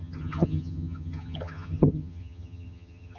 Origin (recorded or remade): remade